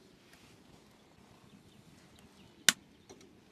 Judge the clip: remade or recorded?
recorded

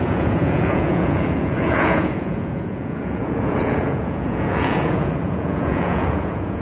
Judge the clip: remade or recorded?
remade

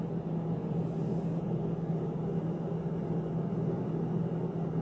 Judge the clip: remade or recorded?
recorded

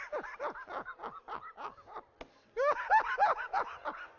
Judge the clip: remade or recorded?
recorded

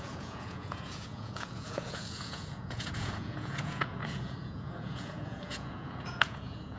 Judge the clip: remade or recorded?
remade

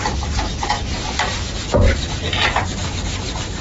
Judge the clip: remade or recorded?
recorded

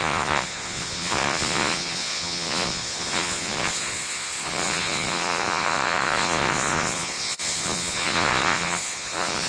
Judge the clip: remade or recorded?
remade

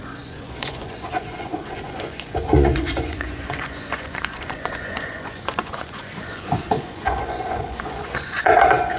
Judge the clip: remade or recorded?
remade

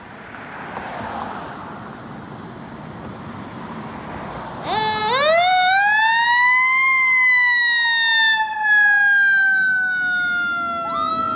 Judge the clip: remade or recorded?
recorded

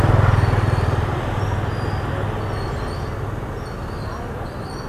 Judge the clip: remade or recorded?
recorded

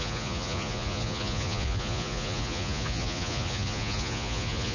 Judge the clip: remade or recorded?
remade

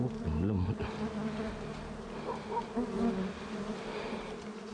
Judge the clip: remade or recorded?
recorded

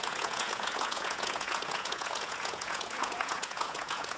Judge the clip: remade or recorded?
remade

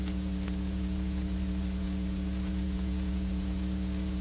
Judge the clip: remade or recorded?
remade